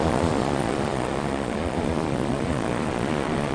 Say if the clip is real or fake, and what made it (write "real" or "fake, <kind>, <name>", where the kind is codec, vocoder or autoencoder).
fake, vocoder, Vocos